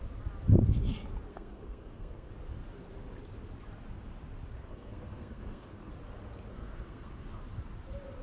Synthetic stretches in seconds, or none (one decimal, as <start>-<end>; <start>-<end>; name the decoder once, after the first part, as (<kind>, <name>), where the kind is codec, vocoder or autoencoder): 1.3-2.3 (codec, SNAC); 4.7-5.9; 6.5-7.4